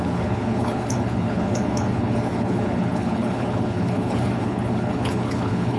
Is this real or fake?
fake